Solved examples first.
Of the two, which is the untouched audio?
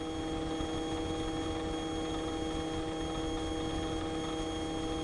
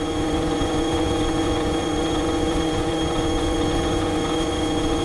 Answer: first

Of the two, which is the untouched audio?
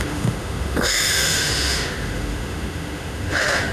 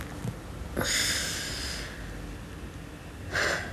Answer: second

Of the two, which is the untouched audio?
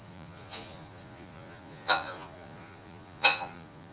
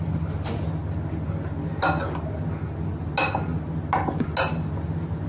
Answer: second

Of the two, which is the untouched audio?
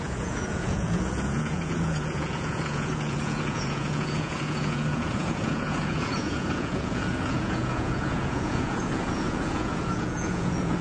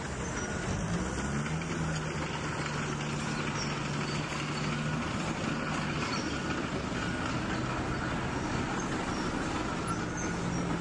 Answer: second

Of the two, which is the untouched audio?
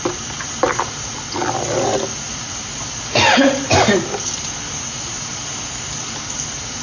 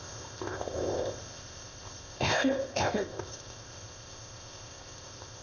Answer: first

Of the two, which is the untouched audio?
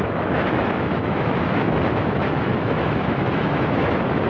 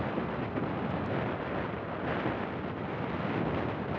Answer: second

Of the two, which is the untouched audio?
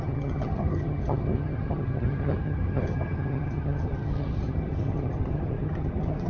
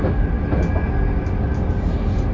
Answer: second